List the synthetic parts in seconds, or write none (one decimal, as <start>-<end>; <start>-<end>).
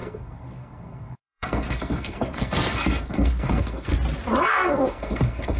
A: 0.0-3.9; 4.5-5.6